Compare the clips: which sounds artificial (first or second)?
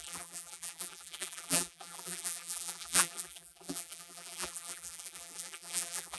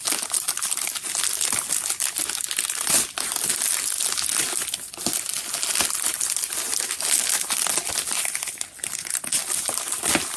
first